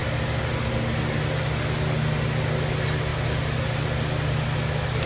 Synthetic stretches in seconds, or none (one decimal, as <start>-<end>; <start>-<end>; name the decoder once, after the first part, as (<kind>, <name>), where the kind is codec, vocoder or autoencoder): none